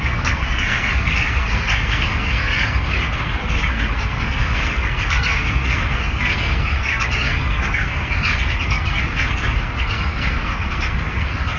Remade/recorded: remade